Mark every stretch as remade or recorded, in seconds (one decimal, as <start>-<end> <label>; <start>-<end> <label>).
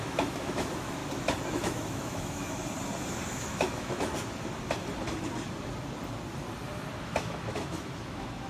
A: 0.0-1.0 remade; 1.0-1.5 recorded; 1.5-2.6 remade; 2.6-3.3 recorded; 3.3-4.1 remade; 4.1-7.0 recorded; 7.0-8.5 remade